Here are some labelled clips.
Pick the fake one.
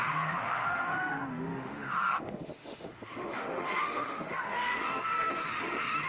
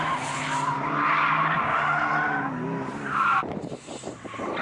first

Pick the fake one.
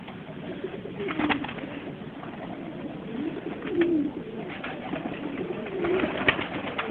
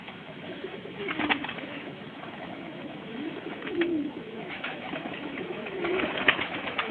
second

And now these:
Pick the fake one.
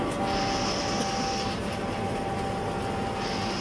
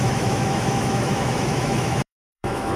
second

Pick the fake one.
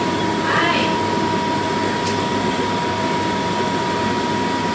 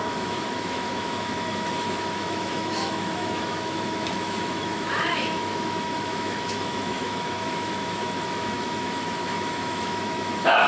second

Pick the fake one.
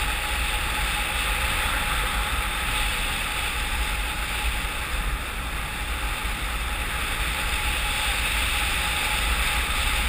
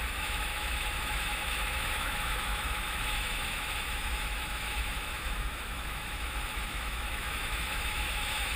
second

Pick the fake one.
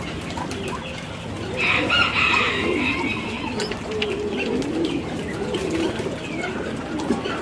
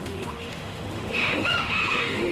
second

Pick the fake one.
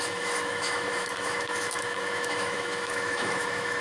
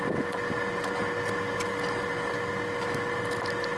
first